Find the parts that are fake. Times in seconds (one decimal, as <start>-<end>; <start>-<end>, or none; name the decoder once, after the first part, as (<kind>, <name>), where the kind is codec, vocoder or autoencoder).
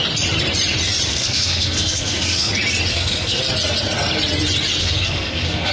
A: 1.1-2.5 (codec, SNAC); 2.9-3.4; 4.8-5.7